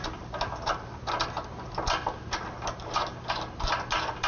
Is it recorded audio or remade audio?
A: recorded